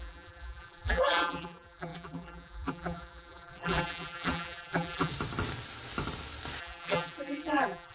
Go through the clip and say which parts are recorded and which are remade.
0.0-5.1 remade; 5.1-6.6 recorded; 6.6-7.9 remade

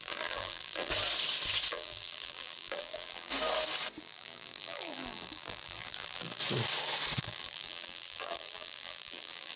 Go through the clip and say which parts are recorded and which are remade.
0.0-0.9 remade; 0.9-1.7 recorded; 1.7-3.3 remade; 3.3-4.0 recorded; 4.0-6.4 remade; 6.4-7.2 recorded; 7.2-9.6 remade

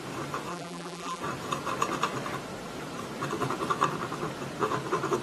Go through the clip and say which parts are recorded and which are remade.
0.0-0.5 recorded; 0.5-1.2 remade; 1.2-5.2 recorded

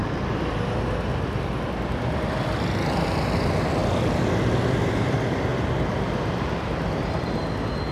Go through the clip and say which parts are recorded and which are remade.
0.0-0.5 remade; 0.5-5.5 recorded; 5.5-7.2 remade; 7.2-7.9 recorded